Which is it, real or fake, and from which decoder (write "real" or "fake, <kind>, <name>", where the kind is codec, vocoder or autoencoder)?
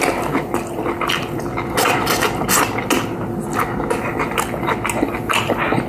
real